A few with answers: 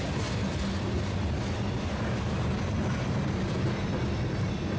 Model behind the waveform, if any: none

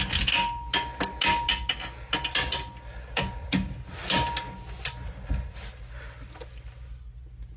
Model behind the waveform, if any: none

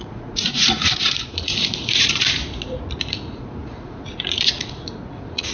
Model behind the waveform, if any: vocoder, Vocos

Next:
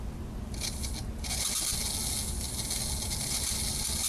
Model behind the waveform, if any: none